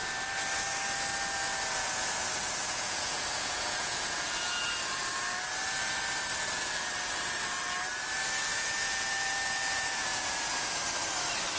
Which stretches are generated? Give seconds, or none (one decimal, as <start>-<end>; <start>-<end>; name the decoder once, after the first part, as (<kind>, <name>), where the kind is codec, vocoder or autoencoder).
1.8-4.7 (vocoder, Vocos); 8.5-10.8

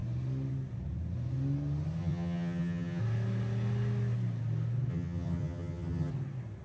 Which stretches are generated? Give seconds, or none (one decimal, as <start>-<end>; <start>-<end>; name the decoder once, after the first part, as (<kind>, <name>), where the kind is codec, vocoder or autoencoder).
2.0-3.0 (vocoder, HiFi-GAN); 4.9-6.1

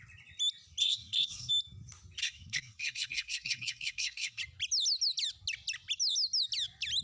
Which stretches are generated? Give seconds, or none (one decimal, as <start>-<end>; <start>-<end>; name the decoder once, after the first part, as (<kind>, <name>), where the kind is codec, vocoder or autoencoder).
0.8-1.5 (codec, SNAC); 2.2-4.4

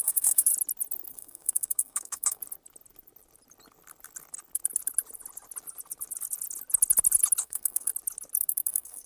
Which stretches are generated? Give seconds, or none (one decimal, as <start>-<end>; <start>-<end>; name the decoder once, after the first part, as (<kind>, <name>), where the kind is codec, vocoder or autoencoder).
0.0-0.5 (codec, SNAC); 1.1-2.4; 7.4-7.9; 8.4-9.1

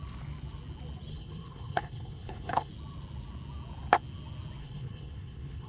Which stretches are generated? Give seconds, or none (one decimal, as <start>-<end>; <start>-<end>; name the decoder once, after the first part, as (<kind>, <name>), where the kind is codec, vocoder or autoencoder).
1.1-2.7 (codec, HILCodec); 4.6-5.7

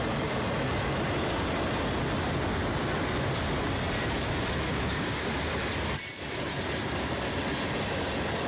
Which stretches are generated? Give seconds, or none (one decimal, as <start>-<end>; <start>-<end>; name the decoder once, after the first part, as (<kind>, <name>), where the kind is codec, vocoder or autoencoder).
4.7-5.2 (codec, DAC)